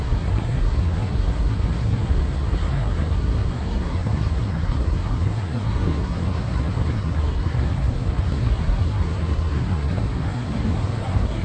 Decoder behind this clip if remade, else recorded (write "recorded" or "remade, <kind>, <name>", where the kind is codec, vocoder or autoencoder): remade, codec, SNAC